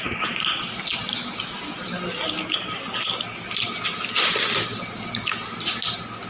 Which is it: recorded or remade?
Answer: recorded